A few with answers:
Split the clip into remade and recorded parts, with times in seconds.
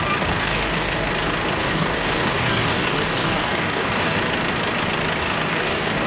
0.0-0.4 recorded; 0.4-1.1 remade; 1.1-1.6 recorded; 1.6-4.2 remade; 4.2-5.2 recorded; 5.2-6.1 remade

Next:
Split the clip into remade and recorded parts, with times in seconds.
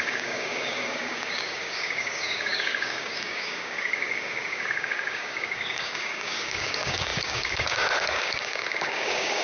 0.0-9.4 remade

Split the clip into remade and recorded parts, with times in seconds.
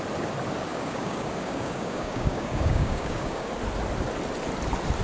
0.0-0.7 recorded; 0.7-3.5 remade; 3.5-5.0 recorded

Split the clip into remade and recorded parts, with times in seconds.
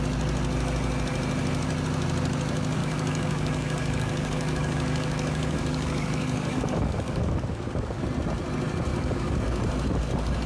0.0-2.8 recorded; 2.8-8.0 remade; 8.0-8.9 recorded; 8.9-9.4 remade; 9.4-10.5 recorded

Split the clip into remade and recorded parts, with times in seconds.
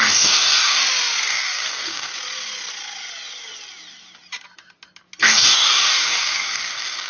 0.0-0.8 remade; 0.8-1.3 recorded; 1.3-2.1 remade; 2.1-5.2 recorded; 5.2-7.1 remade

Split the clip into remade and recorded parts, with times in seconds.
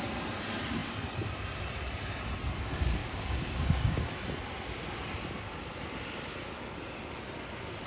0.0-3.0 recorded; 3.0-4.1 remade; 4.1-7.9 recorded